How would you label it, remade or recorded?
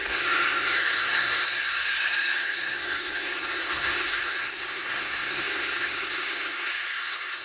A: remade